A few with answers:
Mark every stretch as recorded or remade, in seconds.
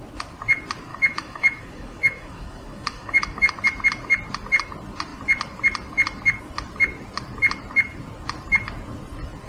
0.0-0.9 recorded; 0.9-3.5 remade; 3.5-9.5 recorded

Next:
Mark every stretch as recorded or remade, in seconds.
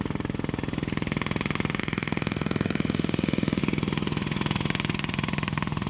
0.0-1.8 recorded; 1.8-3.6 remade; 3.6-5.9 recorded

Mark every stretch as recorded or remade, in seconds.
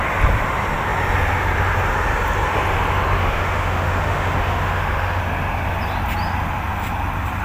0.0-3.2 recorded; 3.2-5.2 remade; 5.2-7.4 recorded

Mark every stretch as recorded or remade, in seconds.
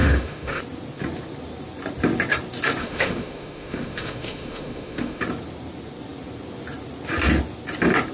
0.0-0.6 remade; 0.6-2.8 recorded; 2.8-5.2 remade; 5.2-8.1 recorded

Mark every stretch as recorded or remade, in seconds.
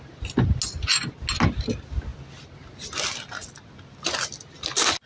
0.0-5.1 recorded